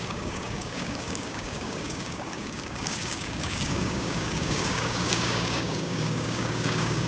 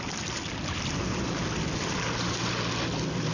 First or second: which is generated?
first